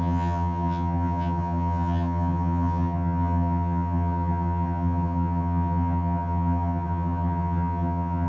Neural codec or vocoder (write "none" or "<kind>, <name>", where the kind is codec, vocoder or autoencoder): vocoder, HiFi-GAN